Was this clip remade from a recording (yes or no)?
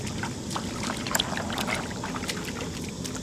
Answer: no